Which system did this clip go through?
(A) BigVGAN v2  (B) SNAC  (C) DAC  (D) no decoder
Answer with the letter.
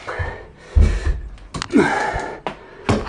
D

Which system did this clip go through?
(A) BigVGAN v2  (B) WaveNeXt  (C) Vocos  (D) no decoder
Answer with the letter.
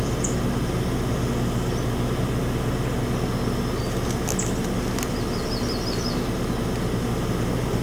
D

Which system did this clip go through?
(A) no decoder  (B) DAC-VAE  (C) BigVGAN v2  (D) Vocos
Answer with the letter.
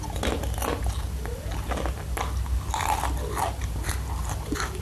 A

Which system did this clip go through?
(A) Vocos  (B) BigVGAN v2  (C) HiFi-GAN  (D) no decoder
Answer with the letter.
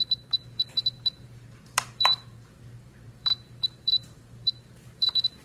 B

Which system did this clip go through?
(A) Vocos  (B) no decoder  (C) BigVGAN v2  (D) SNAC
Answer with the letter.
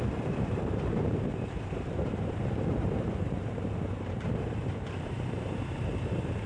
C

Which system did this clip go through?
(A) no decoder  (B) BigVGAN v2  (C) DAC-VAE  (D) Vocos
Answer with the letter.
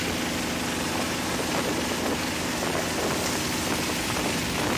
A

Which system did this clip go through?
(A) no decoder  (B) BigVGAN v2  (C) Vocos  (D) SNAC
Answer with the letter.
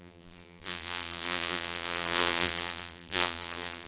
B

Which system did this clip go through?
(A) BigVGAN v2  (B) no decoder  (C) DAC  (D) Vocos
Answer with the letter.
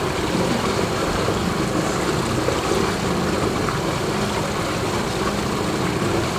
B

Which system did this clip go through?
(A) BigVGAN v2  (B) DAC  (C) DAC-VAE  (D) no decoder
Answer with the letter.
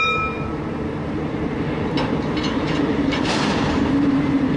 A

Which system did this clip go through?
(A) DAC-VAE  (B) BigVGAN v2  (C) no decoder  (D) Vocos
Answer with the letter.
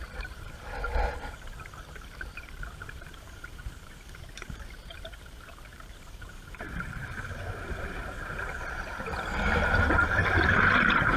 B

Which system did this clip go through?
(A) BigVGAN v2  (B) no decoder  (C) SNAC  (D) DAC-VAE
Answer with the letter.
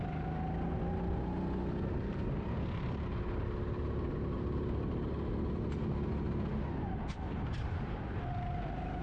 B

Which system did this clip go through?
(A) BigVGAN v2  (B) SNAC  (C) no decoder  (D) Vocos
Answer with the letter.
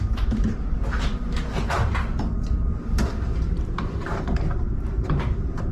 A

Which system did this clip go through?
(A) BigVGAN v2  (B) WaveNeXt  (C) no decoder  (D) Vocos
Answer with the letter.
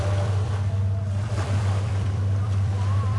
A